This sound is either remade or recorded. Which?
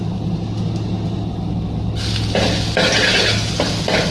recorded